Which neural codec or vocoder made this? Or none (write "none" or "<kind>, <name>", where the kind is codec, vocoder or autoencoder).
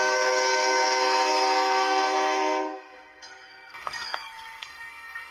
codec, SNAC